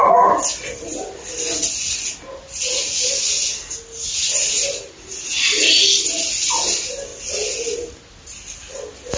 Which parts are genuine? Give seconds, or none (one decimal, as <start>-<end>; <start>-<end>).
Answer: 0.0-9.2